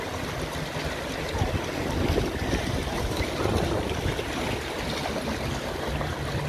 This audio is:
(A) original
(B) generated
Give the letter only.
A